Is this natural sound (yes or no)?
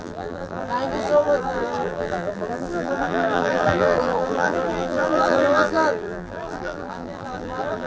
no